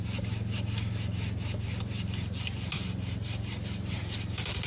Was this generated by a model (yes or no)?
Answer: no